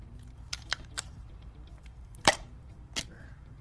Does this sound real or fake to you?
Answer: fake